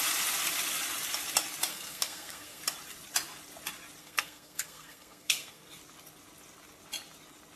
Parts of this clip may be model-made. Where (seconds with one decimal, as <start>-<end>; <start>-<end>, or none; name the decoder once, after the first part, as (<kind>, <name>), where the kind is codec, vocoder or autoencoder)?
1.7-2.6 (codec, SNAC); 4.0-5.7